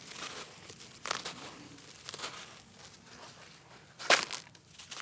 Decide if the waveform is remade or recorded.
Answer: recorded